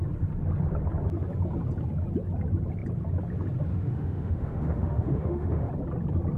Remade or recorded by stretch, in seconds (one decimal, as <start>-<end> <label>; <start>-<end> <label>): 0.0-3.7 recorded; 3.7-5.7 remade; 5.7-6.4 recorded